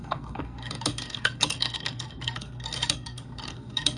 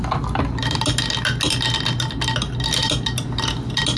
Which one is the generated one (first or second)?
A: first